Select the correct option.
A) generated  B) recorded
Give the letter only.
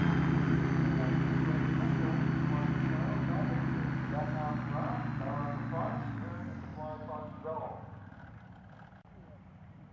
B